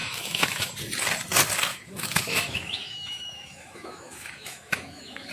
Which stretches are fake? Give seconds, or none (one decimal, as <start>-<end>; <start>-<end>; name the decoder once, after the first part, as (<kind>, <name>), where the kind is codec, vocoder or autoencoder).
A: 0.0-0.7 (autoencoder, DAC-VAE); 1.7-5.3